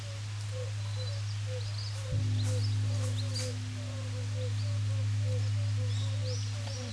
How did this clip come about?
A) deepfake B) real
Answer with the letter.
B